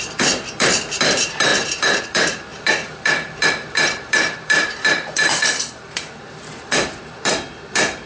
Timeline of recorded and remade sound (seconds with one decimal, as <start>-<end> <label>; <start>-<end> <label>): 0.0-8.1 remade